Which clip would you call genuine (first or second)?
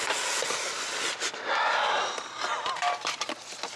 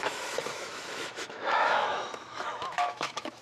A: first